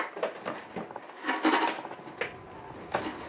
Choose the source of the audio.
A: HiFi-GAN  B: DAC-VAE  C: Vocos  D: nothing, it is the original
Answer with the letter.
D